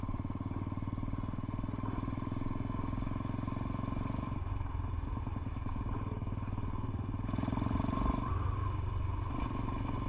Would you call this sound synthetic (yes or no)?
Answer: no